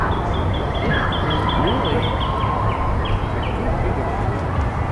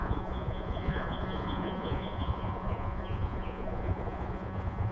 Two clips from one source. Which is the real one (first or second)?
first